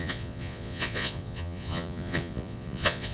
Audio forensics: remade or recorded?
remade